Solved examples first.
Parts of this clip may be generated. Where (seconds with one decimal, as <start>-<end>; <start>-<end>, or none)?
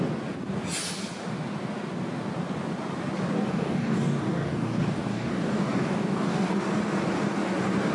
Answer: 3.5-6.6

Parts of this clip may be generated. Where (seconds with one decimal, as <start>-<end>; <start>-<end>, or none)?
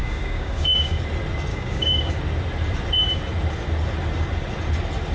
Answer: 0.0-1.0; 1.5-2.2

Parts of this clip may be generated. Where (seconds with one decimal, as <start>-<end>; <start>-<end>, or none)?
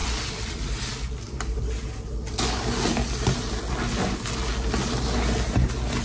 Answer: none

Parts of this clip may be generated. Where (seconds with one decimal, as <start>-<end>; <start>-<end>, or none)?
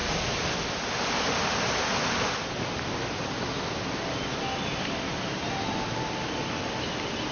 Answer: none